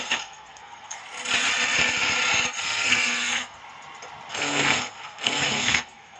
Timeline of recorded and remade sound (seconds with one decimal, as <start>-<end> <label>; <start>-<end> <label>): 0.0-1.0 remade; 1.0-2.6 recorded; 2.6-3.6 remade; 3.6-4.3 recorded; 4.3-6.2 remade